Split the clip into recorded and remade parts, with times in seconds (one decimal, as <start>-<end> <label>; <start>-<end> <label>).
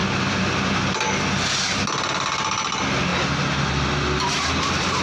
0.0-5.0 recorded